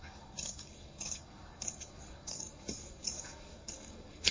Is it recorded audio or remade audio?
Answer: remade